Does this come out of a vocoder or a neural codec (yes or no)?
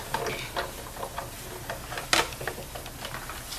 no